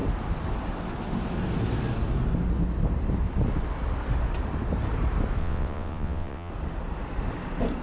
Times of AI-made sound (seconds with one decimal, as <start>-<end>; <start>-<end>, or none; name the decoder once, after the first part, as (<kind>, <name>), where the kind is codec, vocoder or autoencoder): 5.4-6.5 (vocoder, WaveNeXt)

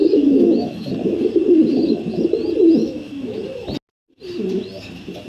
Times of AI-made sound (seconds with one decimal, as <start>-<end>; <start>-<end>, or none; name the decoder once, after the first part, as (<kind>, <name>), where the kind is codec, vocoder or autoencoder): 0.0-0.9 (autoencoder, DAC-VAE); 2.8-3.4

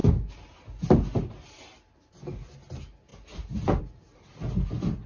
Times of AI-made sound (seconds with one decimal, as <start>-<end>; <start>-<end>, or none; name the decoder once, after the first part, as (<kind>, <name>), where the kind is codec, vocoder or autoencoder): none

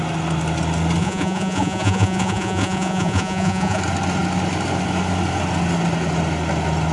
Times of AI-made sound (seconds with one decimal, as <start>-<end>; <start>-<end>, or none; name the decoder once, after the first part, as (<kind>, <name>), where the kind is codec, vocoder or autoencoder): 1.0-3.8 (vocoder, Vocos)

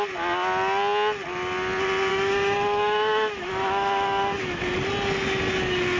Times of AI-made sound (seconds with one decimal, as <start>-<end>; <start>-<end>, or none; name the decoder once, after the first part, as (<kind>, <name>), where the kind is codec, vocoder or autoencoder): 2.1-4.6 (autoencoder, DAC-VAE)